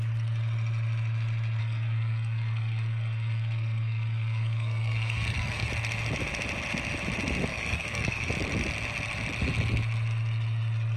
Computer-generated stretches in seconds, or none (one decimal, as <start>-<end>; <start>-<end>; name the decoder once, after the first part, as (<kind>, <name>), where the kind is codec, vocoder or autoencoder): 1.6-5.7 (codec, SNAC); 7.5-8.3

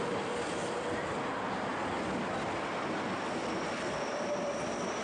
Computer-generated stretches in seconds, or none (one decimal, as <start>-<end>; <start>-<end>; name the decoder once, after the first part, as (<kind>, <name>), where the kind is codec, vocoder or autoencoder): none

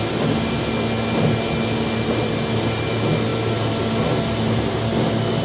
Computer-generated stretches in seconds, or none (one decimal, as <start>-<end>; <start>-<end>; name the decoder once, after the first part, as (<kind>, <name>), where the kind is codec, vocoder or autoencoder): none

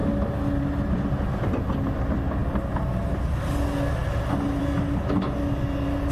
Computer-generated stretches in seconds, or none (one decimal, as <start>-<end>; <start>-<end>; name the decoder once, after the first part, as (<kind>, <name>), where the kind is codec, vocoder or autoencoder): none

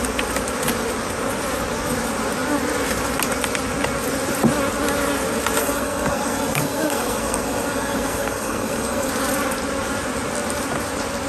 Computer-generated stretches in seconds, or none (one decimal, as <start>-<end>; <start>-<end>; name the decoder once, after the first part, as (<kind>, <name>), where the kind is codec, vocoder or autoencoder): 5.6-9.1 (codec, SNAC)

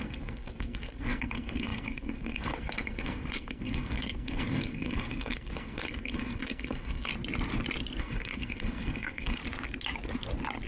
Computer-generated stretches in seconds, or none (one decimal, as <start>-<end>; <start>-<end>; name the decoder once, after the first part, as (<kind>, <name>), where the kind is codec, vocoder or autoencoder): 0.0-7.1 (codec, SNAC); 8.0-9.4

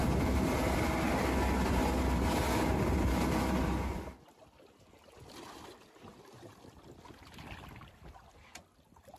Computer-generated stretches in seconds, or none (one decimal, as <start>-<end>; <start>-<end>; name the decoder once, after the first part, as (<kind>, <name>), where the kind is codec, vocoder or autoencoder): none